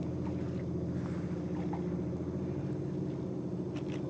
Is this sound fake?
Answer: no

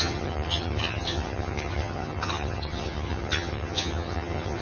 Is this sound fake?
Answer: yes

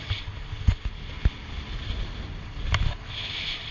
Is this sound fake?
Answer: no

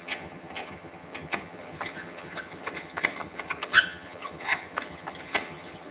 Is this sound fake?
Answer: yes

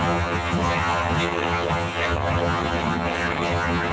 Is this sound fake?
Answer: yes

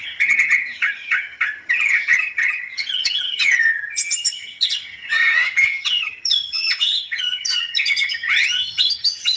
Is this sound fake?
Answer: yes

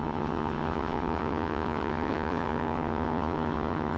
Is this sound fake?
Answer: yes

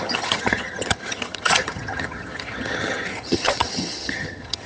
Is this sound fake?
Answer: yes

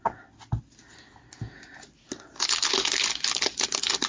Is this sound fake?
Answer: no